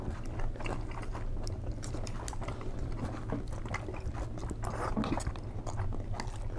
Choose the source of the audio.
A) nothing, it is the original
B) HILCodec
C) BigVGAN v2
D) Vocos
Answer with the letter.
A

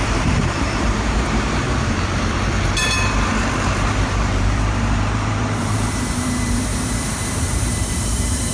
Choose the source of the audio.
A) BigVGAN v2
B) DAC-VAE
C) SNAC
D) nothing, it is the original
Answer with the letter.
A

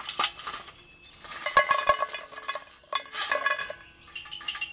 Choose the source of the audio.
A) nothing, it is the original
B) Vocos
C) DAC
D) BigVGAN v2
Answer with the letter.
A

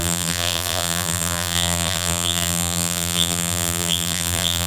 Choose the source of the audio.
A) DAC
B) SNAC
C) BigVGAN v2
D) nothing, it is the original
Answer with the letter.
C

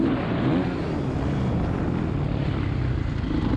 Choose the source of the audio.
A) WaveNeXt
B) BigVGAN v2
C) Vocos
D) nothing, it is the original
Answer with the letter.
D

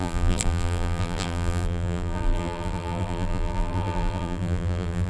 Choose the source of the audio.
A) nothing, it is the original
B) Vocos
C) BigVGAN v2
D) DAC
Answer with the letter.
C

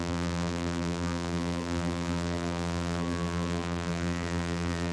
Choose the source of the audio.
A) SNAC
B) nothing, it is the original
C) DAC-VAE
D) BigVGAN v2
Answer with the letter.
D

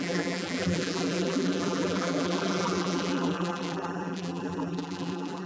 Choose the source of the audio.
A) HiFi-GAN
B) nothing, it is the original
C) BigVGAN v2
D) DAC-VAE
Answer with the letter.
C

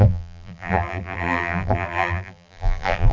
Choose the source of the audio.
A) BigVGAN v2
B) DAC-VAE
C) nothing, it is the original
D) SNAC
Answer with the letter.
A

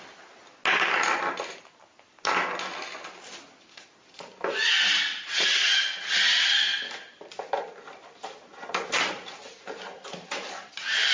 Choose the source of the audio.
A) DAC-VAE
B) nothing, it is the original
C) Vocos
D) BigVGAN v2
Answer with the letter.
B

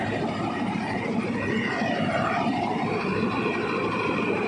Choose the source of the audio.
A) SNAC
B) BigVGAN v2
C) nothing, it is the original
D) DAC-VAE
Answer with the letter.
B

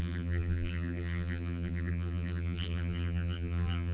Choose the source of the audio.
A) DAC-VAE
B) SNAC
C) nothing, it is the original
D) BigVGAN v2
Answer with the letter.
D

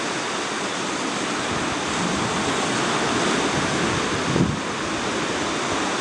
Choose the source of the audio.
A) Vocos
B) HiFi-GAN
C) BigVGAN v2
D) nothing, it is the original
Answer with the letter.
D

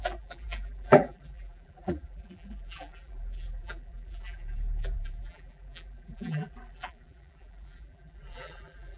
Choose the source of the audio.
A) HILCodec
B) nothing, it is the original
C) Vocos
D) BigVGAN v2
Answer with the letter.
D